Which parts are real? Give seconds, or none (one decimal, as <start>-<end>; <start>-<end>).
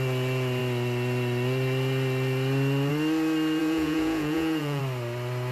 0.0-3.6; 4.8-5.5